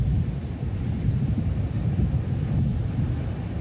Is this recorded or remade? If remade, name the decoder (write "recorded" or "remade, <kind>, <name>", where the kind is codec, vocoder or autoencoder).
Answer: recorded